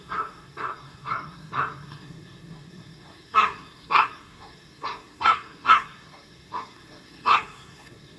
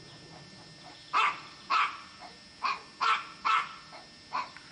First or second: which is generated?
first